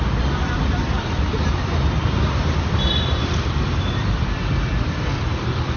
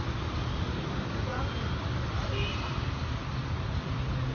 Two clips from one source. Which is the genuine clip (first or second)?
second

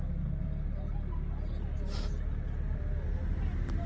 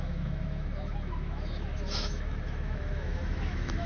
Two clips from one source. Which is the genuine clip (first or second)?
first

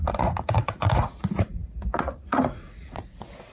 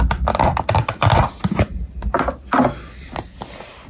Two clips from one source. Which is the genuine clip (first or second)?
second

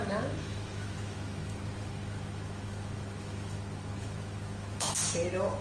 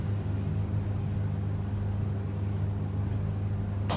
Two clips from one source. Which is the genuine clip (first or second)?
second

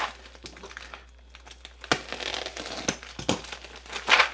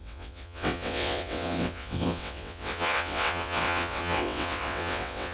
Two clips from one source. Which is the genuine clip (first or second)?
first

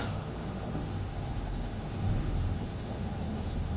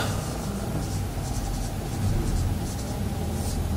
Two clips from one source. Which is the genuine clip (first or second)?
second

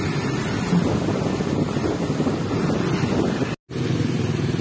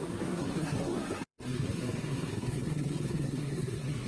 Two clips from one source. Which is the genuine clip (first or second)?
first